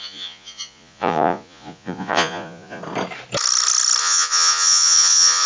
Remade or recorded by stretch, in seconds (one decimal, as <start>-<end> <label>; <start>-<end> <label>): 0.0-2.8 remade; 2.8-4.0 recorded; 4.0-5.5 remade